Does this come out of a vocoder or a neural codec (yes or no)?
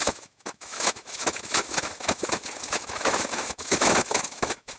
yes